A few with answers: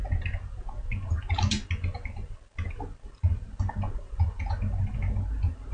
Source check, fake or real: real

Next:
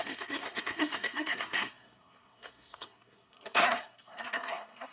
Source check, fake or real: fake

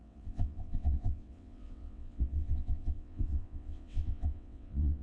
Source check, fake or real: fake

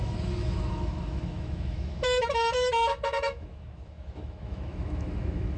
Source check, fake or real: fake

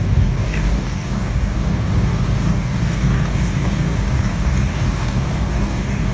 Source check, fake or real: fake